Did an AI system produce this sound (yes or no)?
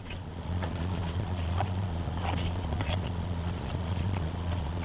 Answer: yes